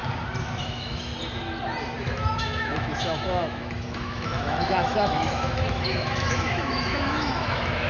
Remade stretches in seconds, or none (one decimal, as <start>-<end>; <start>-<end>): 0.6-1.1; 2.0-7.9